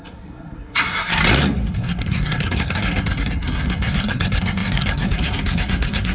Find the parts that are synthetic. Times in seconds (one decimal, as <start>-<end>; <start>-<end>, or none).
0.0-1.2; 1.7-6.1